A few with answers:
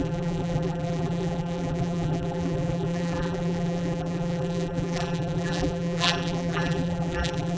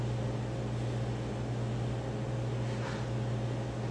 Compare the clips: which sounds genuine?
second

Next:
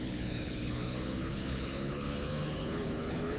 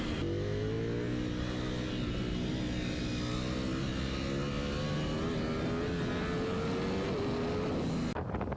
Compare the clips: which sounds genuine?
second